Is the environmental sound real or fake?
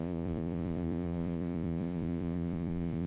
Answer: fake